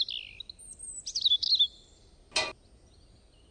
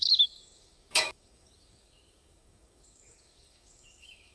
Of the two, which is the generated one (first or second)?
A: second